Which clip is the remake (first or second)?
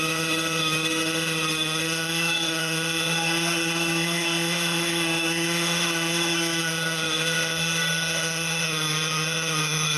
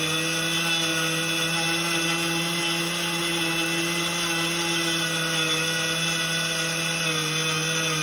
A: first